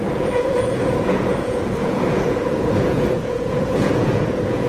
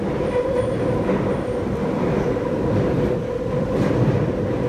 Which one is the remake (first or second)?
first